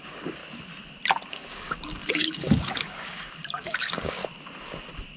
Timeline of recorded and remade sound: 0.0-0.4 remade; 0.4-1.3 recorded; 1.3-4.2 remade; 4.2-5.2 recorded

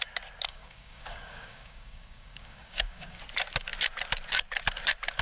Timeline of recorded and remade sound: 0.0-0.5 recorded; 0.5-3.2 remade; 3.2-5.2 recorded

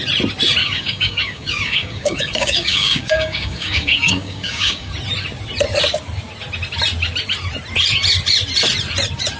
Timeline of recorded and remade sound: 0.0-0.6 recorded; 0.6-4.9 remade; 4.9-9.4 recorded

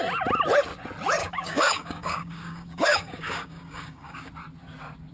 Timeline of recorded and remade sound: 0.0-1.2 recorded; 1.2-4.3 remade; 4.3-5.1 recorded

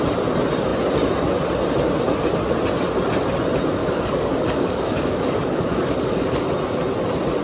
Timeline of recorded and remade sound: 0.0-3.8 recorded; 3.8-6.4 remade; 6.4-7.4 recorded

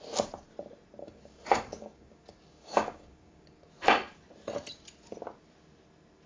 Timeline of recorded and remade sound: 0.0-1.0 recorded; 1.0-3.7 remade; 3.7-6.3 recorded

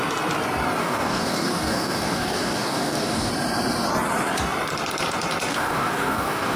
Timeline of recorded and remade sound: 0.0-0.8 recorded; 0.8-3.3 remade; 3.3-5.5 recorded; 5.5-6.6 remade

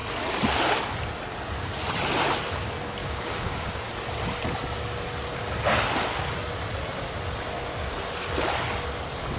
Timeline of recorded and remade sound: 0.0-3.0 recorded; 3.0-3.9 remade; 3.9-9.4 recorded